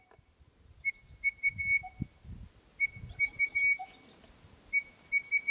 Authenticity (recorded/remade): recorded